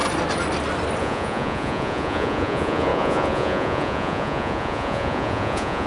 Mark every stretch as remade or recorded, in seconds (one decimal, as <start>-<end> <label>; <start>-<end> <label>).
0.0-1.0 recorded; 1.0-5.9 remade